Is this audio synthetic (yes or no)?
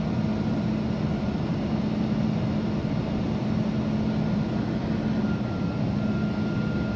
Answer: no